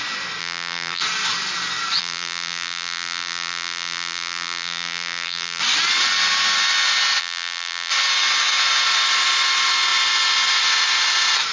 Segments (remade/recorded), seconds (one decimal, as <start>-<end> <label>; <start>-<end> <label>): 0.0-0.4 recorded; 0.4-1.0 remade; 1.0-2.0 recorded; 2.0-5.6 remade; 5.6-7.2 recorded; 7.2-7.9 remade; 7.9-11.5 recorded